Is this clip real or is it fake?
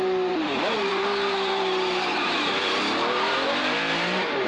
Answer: fake